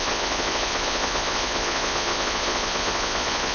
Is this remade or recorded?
remade